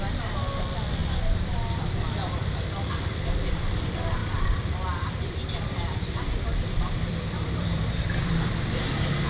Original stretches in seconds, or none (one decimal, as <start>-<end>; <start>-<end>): 0.0-1.0; 2.8-4.2; 8.4-9.3